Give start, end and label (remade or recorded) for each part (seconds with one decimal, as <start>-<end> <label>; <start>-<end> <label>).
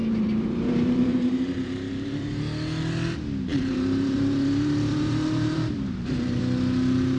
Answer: 0.0-2.4 remade; 2.4-3.5 recorded; 3.5-6.4 remade; 6.4-7.2 recorded